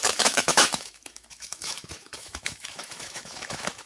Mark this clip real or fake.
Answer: fake